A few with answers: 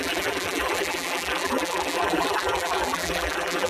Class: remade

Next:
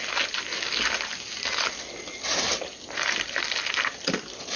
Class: recorded